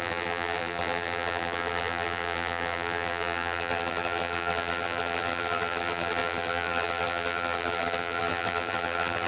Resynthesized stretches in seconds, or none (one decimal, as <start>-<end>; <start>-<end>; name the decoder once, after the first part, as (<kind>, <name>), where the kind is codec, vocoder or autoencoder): 0.0-9.3 (vocoder, BigVGAN v2)